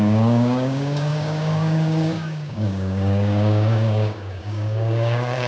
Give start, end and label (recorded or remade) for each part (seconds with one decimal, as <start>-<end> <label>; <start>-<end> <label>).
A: 0.0-5.5 remade